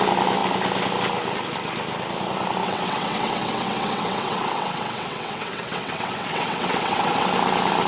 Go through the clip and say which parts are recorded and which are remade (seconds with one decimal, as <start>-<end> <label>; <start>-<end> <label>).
0.0-2.6 recorded; 2.6-7.3 remade; 7.3-7.9 recorded